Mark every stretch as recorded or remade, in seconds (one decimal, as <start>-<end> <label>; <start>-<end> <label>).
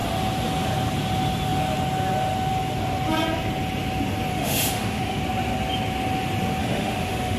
0.0-4.3 recorded; 4.3-5.2 remade; 5.2-6.6 recorded; 6.6-7.4 remade